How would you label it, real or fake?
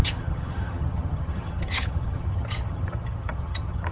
fake